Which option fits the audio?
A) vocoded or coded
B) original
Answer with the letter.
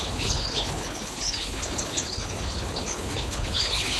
A